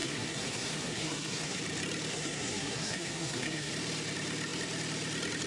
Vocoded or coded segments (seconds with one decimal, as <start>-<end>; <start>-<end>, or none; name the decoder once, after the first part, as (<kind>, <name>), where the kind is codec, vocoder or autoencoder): 0.0-1.6 (codec, SNAC); 2.1-3.7